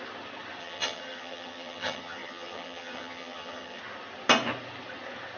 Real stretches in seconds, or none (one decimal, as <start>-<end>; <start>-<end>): 0.0-0.6; 3.8-5.4